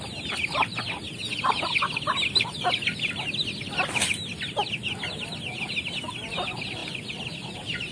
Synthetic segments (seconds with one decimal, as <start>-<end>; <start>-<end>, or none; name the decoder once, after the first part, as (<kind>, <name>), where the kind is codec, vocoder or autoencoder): none